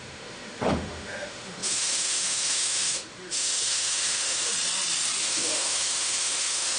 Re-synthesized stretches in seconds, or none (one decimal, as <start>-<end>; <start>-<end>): 0.0-4.5; 5.2-6.8